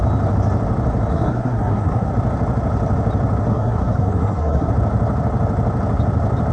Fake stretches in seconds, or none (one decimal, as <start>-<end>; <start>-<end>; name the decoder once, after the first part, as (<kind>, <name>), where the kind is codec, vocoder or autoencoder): 1.1-2.1 (codec, SNAC); 3.5-4.7